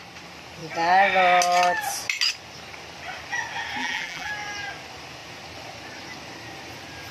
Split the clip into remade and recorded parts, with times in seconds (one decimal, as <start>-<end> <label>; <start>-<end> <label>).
0.0-3.8 recorded; 3.8-4.3 remade; 4.3-7.1 recorded